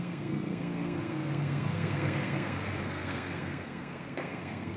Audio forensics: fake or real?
fake